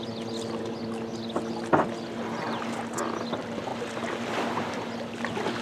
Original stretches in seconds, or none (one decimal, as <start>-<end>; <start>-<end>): 0.0-5.6